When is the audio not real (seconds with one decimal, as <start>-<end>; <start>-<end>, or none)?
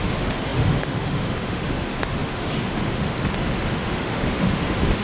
0.0-5.0